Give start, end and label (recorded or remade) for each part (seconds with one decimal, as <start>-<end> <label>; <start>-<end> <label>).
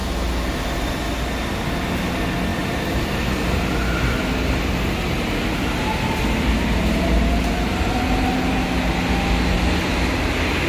0.0-10.7 recorded